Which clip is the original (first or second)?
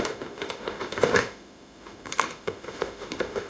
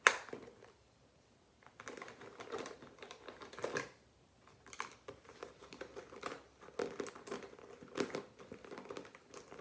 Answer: second